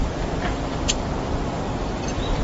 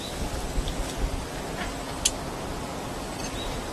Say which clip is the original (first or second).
second